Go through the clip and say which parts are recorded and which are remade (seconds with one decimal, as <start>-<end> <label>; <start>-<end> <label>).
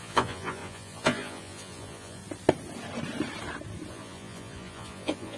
0.0-2.2 remade; 2.2-3.9 recorded; 3.9-5.4 remade